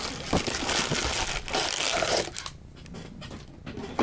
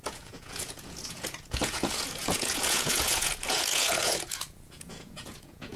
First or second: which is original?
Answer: first